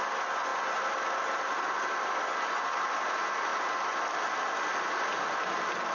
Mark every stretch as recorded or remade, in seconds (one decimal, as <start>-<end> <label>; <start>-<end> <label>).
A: 0.0-5.9 recorded